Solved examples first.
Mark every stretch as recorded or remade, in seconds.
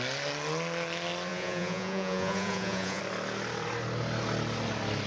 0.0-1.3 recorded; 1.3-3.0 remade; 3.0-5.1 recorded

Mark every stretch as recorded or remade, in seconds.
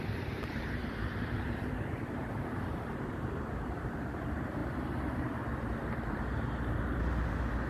0.0-4.6 remade; 4.6-6.8 recorded; 6.8-7.7 remade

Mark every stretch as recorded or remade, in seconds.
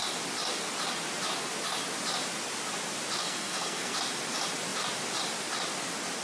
0.0-3.2 recorded; 3.2-4.0 remade; 4.0-6.2 recorded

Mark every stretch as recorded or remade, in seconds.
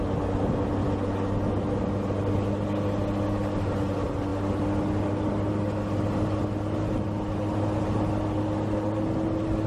0.0-9.7 recorded